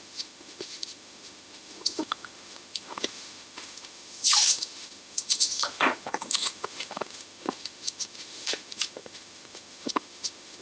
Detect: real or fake fake